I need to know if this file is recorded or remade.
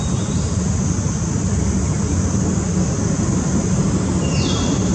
recorded